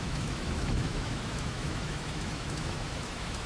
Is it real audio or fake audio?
fake